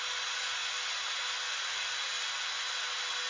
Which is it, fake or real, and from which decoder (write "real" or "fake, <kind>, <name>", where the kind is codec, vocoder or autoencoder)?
real